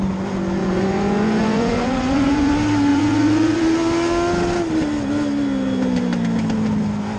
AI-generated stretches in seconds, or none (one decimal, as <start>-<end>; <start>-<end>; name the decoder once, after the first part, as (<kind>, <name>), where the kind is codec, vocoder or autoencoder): 0.6-2.5 (vocoder, Vocos); 2.9-3.6